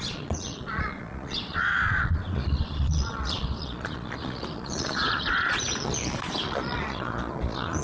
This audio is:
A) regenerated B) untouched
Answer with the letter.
A